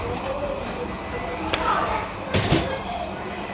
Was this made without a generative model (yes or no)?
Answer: yes